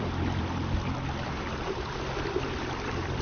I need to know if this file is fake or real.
fake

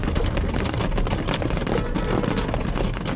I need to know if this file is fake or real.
real